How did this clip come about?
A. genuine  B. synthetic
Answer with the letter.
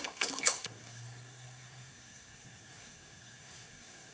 B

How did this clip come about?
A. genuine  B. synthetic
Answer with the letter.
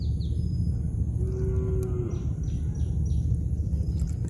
A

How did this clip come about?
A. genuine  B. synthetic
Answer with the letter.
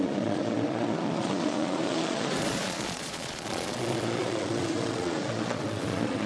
B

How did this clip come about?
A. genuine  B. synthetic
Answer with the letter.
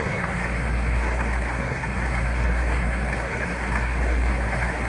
B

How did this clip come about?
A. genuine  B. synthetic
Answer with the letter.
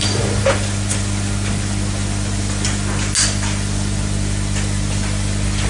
A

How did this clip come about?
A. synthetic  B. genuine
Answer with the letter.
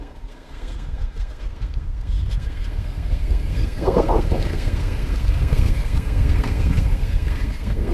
A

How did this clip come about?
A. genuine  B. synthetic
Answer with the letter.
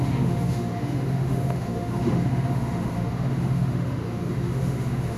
B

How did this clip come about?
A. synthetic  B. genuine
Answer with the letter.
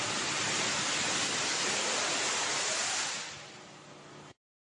B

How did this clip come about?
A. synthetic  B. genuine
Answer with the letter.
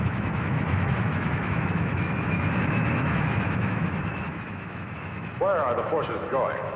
A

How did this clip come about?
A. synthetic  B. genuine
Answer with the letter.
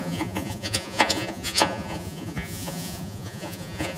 A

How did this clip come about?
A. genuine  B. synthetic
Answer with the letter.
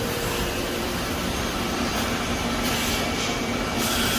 B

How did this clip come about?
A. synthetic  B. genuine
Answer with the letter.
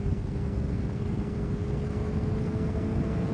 A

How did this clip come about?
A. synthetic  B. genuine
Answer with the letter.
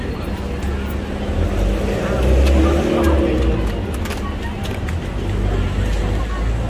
B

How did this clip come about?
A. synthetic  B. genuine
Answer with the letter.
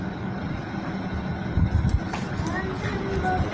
B